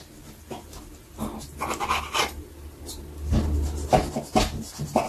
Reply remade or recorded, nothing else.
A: recorded